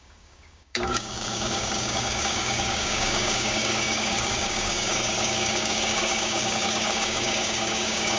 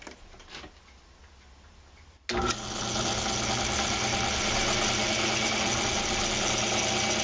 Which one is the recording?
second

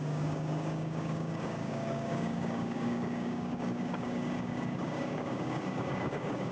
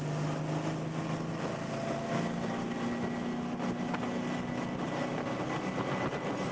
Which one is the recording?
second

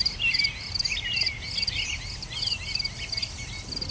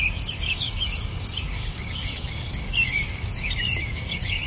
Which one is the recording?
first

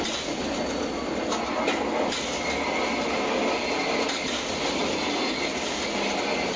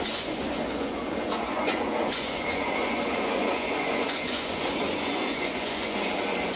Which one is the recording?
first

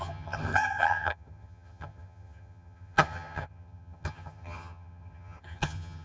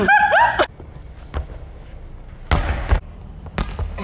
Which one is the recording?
second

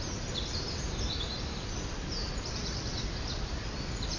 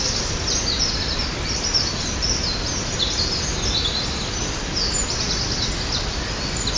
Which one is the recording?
second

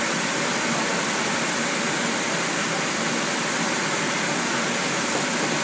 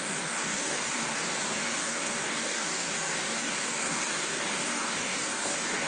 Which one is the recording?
first